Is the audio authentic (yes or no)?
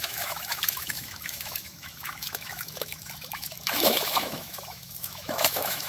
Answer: no